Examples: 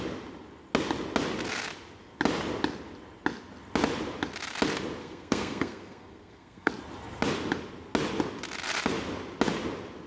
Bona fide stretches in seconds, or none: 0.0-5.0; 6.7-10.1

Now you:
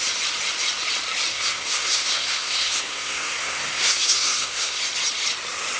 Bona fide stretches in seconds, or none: 0.0-1.3; 4.8-5.8